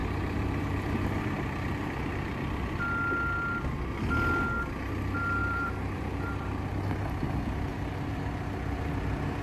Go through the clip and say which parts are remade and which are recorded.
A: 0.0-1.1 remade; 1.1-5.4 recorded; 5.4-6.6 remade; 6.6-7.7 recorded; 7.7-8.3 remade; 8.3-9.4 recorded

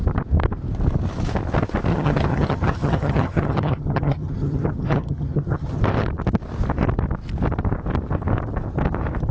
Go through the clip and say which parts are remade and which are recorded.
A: 0.0-1.9 recorded; 1.9-5.8 remade; 5.8-9.3 recorded

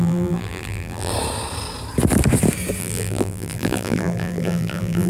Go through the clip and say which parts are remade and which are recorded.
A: 0.0-1.1 remade; 1.1-2.8 recorded; 2.8-5.1 remade

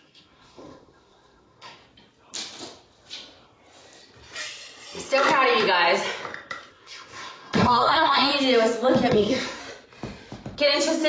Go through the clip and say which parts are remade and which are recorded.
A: 0.0-1.8 remade; 1.8-6.7 recorded; 6.7-8.3 remade; 8.3-9.1 recorded; 9.1-9.6 remade; 9.6-11.1 recorded

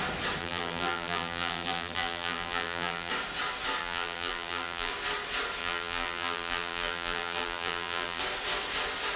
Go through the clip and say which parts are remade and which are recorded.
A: 0.0-0.4 recorded; 0.4-3.1 remade; 3.1-3.8 recorded; 3.8-4.9 remade; 4.9-5.6 recorded; 5.6-8.2 remade; 8.2-9.2 recorded

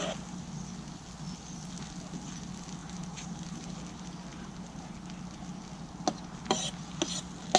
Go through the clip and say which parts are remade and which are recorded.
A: 0.0-2.8 recorded; 2.8-3.8 remade; 3.8-4.3 recorded; 4.3-4.9 remade; 4.9-7.6 recorded

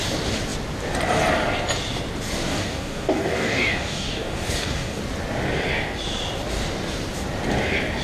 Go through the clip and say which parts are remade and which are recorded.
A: 0.0-2.5 recorded; 2.5-5.0 remade; 5.0-8.0 recorded